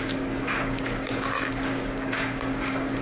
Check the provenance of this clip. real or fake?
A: fake